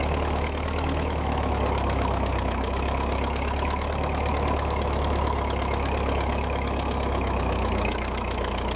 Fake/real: fake